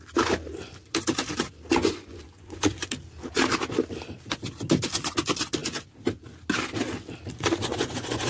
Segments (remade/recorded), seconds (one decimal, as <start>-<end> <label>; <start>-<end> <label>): 0.0-1.8 recorded; 1.8-2.9 remade; 2.9-7.6 recorded; 7.6-8.3 remade